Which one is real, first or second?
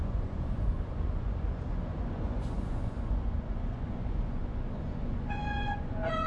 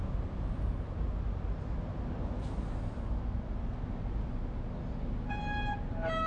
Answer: second